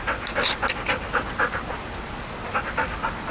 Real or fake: real